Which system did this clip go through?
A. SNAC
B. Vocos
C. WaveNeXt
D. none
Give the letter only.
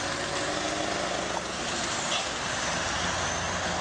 D